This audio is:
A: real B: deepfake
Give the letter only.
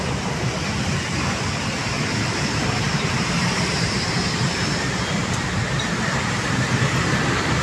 B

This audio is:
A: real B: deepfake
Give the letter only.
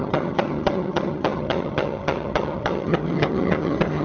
B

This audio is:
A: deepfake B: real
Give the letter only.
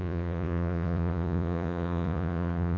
A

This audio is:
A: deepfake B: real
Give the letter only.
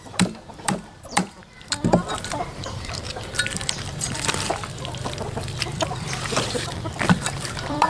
A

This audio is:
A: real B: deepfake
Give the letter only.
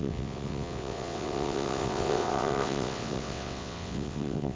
B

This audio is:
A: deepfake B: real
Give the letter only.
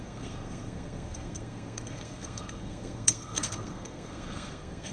A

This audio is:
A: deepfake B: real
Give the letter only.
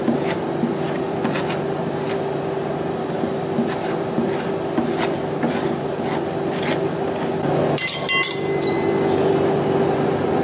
B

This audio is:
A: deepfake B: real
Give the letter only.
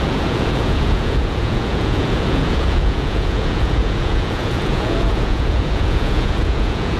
A